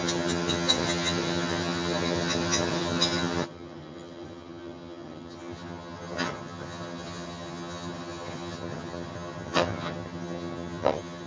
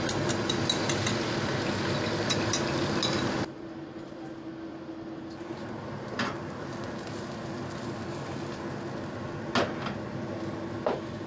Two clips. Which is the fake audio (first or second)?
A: first